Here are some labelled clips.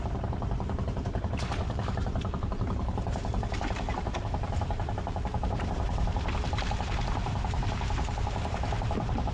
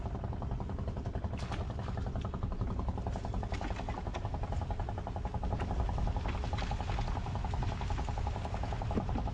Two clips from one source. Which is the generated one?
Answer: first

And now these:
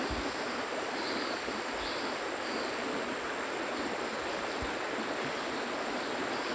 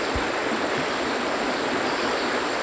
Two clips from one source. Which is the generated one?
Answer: second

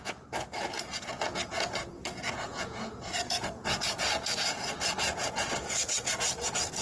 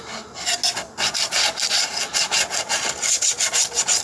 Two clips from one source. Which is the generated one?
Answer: first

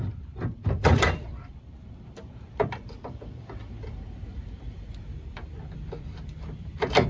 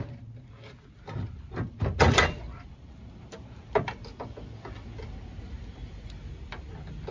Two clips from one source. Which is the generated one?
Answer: first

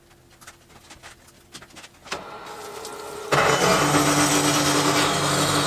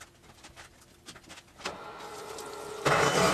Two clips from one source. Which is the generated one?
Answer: second